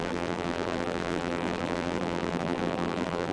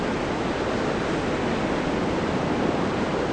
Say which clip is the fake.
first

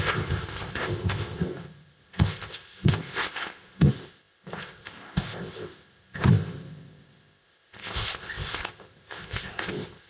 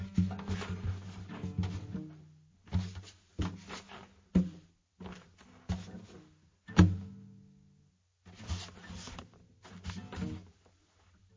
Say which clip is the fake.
first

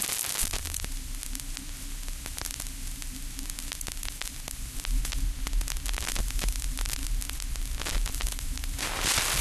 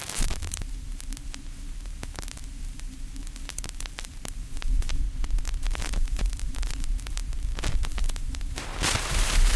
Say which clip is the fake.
second